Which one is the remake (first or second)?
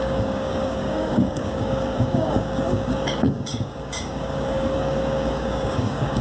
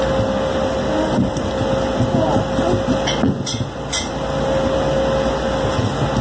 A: first